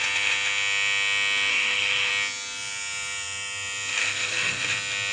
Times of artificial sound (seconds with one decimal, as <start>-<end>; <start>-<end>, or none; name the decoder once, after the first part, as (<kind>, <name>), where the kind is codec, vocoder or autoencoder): 1.5-2.1 (codec, SNAC); 4.0-4.6